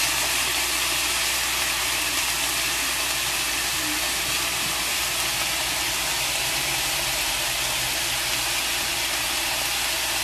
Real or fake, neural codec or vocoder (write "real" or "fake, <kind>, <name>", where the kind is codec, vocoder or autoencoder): real